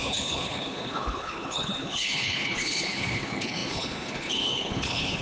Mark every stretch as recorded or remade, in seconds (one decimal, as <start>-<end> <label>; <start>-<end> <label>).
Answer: 0.0-5.2 remade

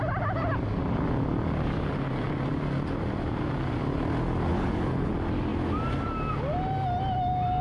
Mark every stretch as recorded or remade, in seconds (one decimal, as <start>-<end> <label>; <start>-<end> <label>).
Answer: 0.0-4.5 recorded; 4.5-5.1 remade; 5.1-7.6 recorded

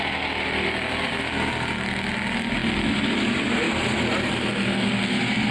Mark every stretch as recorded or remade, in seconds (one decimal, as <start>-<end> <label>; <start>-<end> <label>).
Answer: 0.0-5.5 recorded

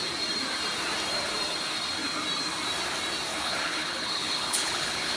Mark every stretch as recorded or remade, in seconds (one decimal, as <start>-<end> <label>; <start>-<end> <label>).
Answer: 0.0-3.3 recorded; 3.3-5.2 remade

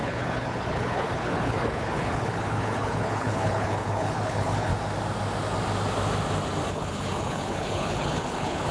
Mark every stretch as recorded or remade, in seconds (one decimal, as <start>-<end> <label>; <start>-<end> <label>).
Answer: 0.0-4.7 remade; 4.7-6.7 recorded; 6.7-8.7 remade

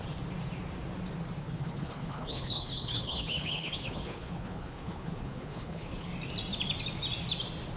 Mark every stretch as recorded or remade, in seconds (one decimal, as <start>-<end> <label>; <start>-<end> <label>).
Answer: 0.0-1.4 recorded; 1.4-6.1 remade; 6.1-7.8 recorded

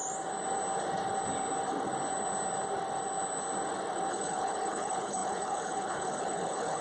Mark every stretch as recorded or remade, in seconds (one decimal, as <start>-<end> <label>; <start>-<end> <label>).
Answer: 0.0-4.1 recorded; 4.1-6.8 remade

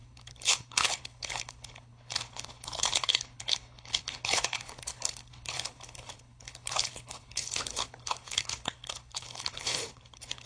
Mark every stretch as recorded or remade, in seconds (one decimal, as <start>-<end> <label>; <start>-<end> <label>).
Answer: 0.0-10.5 remade